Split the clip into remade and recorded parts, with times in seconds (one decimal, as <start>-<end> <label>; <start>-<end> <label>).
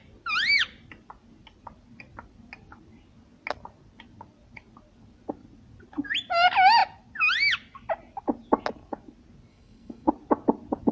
0.0-9.5 recorded; 9.5-10.1 remade; 10.1-10.9 recorded